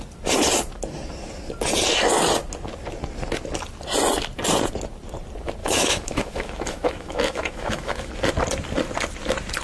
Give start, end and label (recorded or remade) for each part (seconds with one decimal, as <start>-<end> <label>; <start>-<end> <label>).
0.0-5.6 recorded; 5.6-8.1 remade; 8.1-9.6 recorded